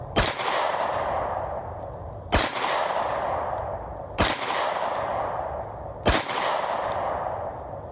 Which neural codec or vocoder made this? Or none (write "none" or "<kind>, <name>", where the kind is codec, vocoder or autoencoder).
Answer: none